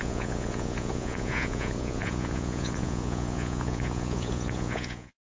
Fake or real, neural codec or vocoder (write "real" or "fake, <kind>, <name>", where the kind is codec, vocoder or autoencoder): fake, vocoder, Vocos